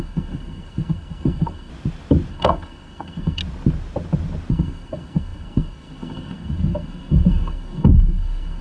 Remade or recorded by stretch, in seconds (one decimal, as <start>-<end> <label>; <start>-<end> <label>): 0.0-1.7 remade; 1.7-2.3 recorded; 2.3-3.4 remade; 3.4-4.5 recorded; 4.5-8.6 remade